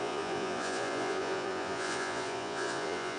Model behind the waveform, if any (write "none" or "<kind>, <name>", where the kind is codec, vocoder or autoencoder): vocoder, Vocos